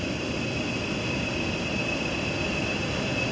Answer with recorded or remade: recorded